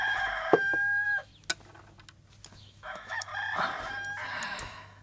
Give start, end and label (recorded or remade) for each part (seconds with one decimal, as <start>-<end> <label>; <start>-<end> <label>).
0.0-1.3 remade; 1.3-2.5 recorded; 2.5-3.3 remade; 3.3-4.6 recorded; 4.6-5.0 remade

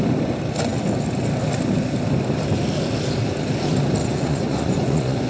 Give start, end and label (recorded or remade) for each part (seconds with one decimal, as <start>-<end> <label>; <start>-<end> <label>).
0.0-4.0 recorded; 4.0-5.3 remade

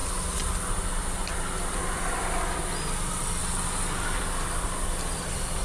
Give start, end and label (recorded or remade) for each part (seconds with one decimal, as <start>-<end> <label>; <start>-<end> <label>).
0.0-5.6 recorded

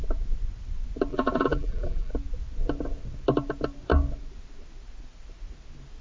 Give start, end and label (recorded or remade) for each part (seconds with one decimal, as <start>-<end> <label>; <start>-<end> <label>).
0.0-1.1 recorded; 1.1-2.1 remade; 2.1-6.0 recorded

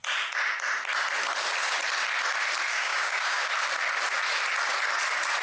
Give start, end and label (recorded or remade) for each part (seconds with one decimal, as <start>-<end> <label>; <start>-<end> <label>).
0.0-2.7 recorded; 2.7-3.5 remade; 3.5-5.4 recorded

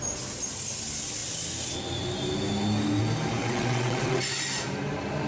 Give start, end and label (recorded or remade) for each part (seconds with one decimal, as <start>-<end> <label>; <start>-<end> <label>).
0.0-3.4 recorded; 3.4-4.2 remade; 4.2-5.3 recorded

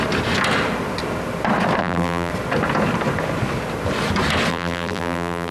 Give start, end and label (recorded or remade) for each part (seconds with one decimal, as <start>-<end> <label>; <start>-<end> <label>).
0.0-1.8 recorded; 1.8-2.3 remade; 2.3-4.5 recorded; 4.5-5.5 remade